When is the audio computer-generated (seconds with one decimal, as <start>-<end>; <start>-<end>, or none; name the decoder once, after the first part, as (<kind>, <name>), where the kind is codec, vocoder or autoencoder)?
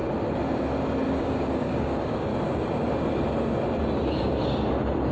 1.2-2.3 (codec, DAC)